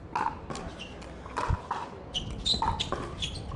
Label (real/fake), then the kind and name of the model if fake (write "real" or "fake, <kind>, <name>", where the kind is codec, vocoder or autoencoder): real